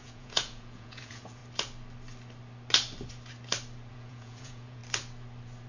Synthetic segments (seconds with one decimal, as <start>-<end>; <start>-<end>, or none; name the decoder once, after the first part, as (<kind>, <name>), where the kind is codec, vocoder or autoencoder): 0.0-1.4 (vocoder, Vocos); 3.9-4.8